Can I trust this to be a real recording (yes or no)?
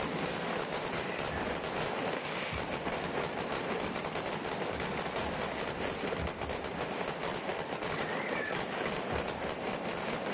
yes